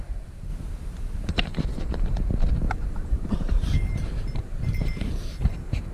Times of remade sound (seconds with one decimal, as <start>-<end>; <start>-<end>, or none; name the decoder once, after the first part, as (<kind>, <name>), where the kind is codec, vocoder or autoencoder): 0.0-0.5 (vocoder, BigVGAN v2); 1.3-5.9